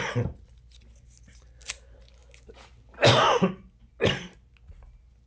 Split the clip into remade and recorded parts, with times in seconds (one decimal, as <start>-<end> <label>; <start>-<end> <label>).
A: 0.0-5.3 recorded